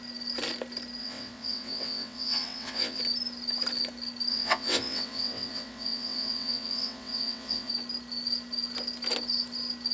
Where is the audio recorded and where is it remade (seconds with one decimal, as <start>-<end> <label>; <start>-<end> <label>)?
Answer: 0.0-1.0 recorded; 1.0-3.0 remade; 3.0-4.3 recorded; 4.3-7.7 remade; 7.7-9.9 recorded